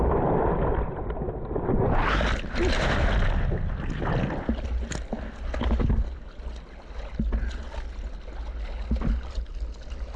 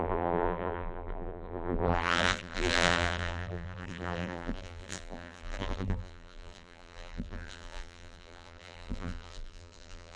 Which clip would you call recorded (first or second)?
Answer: first